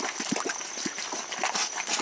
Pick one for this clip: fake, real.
real